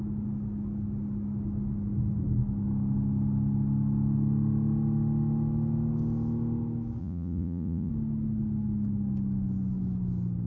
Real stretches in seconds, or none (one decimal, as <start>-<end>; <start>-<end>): 0.0-7.0; 7.9-10.5